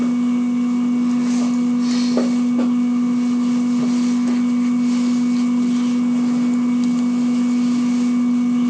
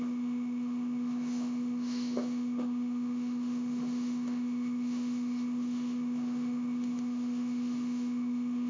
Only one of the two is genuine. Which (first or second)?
first